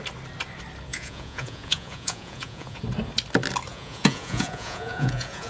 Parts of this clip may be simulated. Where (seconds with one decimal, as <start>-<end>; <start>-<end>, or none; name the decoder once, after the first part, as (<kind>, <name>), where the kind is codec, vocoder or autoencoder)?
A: 0.9-2.8 (vocoder, Vocos); 3.7-5.5